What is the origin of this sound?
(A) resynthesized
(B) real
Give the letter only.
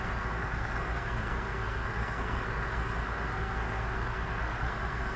A